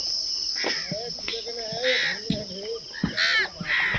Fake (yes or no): no